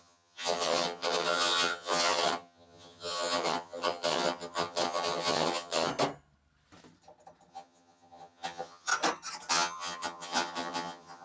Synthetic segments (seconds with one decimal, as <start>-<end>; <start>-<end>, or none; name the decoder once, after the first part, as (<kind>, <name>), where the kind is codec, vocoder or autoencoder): 0.0-5.9 (vocoder, HiFi-GAN); 7.5-8.9; 9.5-11.2